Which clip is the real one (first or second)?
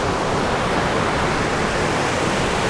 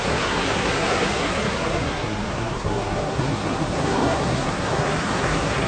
first